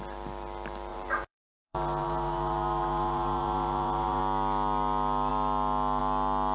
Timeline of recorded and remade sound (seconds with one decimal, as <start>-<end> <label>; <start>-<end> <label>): 0.0-0.9 recorded; 0.9-4.2 remade; 4.2-6.5 recorded

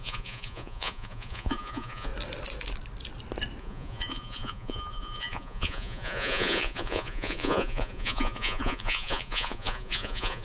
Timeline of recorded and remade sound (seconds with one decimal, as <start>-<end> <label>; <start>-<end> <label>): 0.0-2.1 remade; 2.1-3.6 recorded; 3.6-10.4 remade